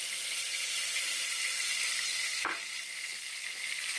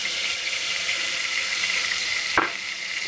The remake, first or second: second